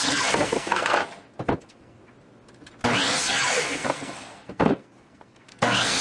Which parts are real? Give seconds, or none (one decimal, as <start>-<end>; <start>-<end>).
1.0-1.6; 2.0-3.2